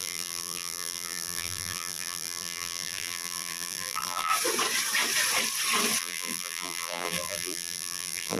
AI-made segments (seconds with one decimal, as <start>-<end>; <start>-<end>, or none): 0.0-4.3; 6.0-8.4